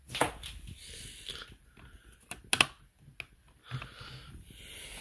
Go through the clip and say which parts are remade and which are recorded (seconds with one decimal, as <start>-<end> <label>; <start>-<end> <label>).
0.0-5.0 recorded